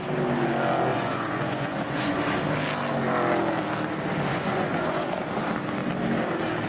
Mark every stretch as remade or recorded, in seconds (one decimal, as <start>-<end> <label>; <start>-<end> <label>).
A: 0.0-0.9 recorded; 0.9-2.2 remade; 2.2-4.3 recorded; 4.3-5.2 remade; 5.2-6.7 recorded